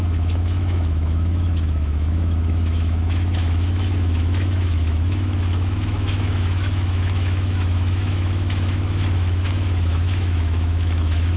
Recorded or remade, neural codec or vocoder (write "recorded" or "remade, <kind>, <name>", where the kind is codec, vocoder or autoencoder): remade, autoencoder, DAC-VAE